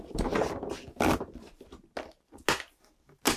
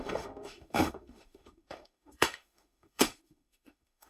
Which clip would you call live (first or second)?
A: first